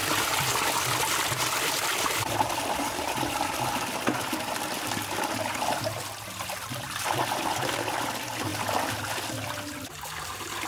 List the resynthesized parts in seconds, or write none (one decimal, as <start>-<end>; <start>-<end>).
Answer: 0.0-4.6; 8.5-9.0